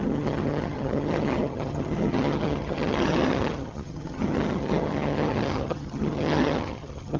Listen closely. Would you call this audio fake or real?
fake